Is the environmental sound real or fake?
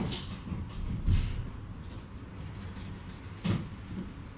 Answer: real